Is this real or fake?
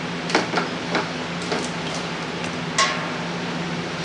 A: real